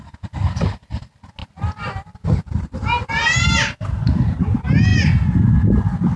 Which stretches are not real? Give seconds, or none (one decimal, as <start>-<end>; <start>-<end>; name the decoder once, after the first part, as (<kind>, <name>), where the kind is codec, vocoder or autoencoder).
none